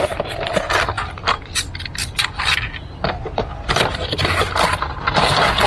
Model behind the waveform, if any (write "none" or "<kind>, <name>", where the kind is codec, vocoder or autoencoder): none